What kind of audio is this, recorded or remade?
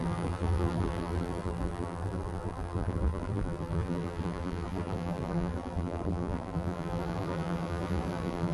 remade